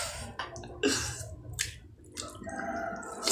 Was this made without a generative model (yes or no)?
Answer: yes